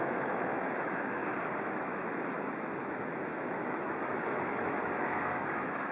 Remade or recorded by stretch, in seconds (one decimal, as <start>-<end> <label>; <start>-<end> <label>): 0.0-1.2 remade; 1.2-1.7 recorded; 1.7-5.9 remade